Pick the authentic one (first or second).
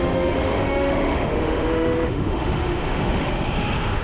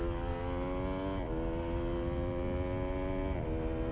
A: second